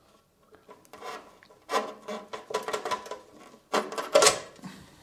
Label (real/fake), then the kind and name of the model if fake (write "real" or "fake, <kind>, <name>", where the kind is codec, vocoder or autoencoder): real